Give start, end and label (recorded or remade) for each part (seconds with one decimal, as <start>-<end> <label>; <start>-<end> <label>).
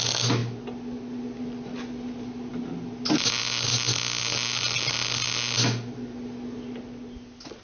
0.0-7.6 recorded